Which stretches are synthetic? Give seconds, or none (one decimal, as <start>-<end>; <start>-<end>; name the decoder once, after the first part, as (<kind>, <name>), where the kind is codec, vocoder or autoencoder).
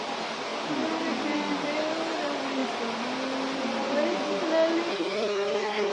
4.9-5.9 (codec, SNAC)